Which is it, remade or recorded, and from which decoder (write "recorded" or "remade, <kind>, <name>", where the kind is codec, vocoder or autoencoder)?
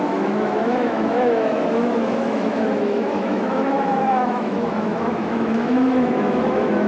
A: remade, autoencoder, DAC-VAE